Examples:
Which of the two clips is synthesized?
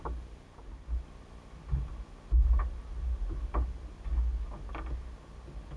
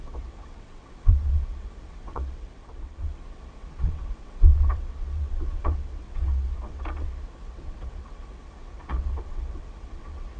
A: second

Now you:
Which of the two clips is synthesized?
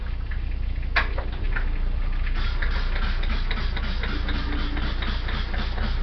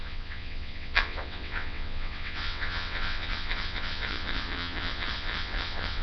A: second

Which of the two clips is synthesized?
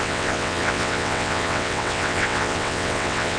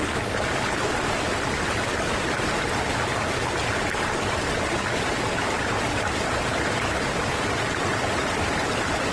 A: first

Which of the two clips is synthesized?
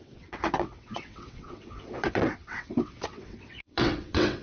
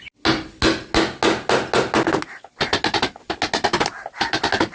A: first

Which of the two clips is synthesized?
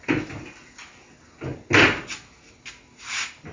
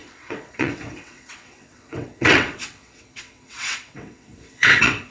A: second